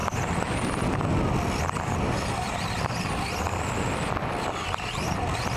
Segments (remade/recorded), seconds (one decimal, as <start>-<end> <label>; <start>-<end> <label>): 0.0-5.6 recorded